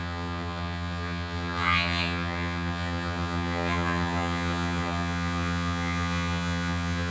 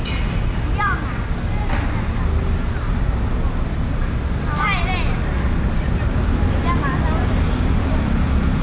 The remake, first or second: first